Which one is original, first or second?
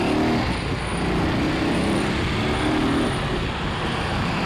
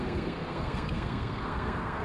first